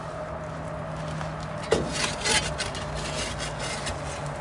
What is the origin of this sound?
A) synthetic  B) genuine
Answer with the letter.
B